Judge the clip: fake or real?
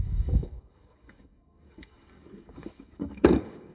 fake